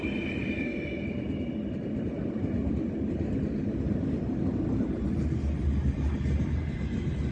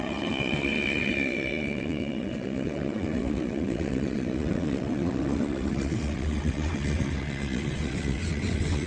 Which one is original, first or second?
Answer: first